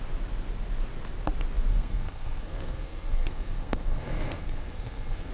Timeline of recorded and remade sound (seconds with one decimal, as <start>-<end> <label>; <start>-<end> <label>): 0.0-1.7 recorded; 1.7-5.3 remade